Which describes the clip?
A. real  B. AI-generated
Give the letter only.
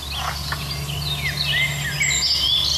A